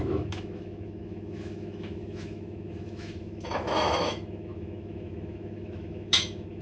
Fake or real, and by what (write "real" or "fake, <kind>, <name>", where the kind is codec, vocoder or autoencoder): fake, autoencoder, DAC-VAE